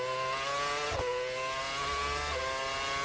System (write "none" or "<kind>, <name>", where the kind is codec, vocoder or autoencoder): none